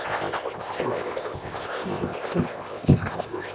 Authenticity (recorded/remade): remade